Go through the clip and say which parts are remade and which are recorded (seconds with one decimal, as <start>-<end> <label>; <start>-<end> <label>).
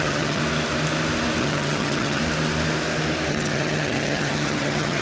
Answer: 0.0-0.4 remade; 0.4-1.4 recorded; 1.4-2.2 remade; 2.2-3.3 recorded; 3.3-5.0 remade